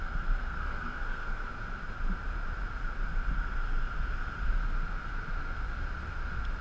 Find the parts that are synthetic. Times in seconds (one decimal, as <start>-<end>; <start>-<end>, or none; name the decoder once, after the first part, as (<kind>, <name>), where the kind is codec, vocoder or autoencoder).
0.4-1.4 (codec, SNAC)